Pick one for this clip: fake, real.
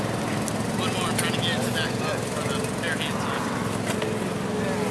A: real